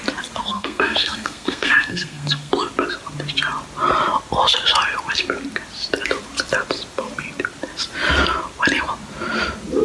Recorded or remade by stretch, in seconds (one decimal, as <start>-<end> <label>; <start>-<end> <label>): 0.0-0.4 recorded; 0.4-2.5 remade; 2.5-9.8 recorded